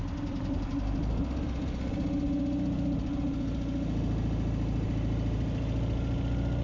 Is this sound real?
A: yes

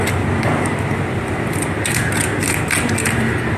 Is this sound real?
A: no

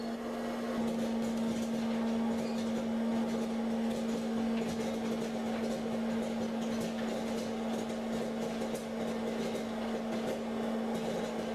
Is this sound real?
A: yes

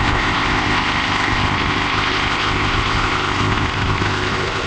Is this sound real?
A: no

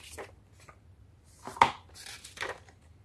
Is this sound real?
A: yes